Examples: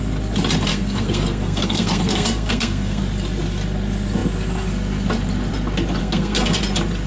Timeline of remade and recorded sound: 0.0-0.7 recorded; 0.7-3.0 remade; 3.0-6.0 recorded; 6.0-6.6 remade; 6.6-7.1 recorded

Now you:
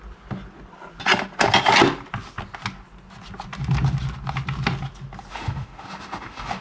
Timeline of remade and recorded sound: 0.0-5.3 recorded; 5.3-6.6 remade